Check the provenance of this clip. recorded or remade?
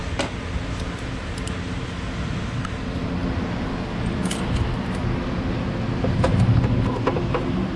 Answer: recorded